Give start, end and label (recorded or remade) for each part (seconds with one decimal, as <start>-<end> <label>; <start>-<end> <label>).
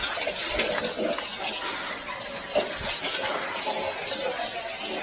0.0-5.0 recorded